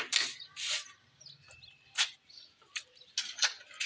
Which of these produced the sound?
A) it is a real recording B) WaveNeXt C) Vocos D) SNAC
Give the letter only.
A